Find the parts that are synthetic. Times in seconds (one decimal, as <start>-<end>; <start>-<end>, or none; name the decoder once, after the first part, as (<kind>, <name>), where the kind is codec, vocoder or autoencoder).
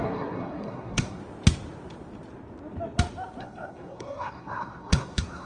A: 0.0-1.2 (codec, SNAC); 3.4-5.5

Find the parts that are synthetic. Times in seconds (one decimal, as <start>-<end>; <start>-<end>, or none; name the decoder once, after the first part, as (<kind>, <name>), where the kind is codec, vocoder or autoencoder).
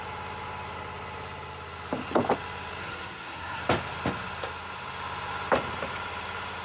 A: 2.8-3.6 (codec, SNAC)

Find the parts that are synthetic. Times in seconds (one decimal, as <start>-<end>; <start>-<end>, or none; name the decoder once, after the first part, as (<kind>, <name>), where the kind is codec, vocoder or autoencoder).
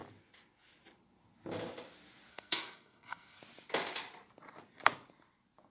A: 2.3-3.4 (codec, SNAC)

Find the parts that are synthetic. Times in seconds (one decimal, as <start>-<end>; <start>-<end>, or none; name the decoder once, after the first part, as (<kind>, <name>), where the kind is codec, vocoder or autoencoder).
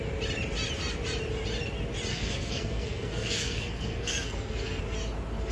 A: 2.1-4.8 (codec, SNAC)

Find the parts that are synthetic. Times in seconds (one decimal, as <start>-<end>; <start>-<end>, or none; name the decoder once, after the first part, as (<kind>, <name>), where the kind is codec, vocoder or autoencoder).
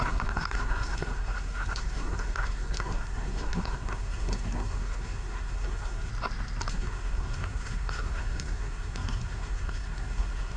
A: 0.0-6.1 (codec, SNAC); 6.7-10.6